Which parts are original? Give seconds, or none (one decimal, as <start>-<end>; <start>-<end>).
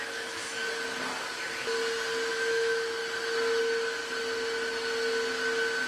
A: 0.6-2.3; 3.0-3.6; 4.0-5.9